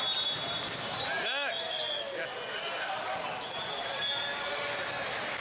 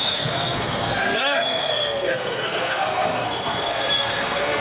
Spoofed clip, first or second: second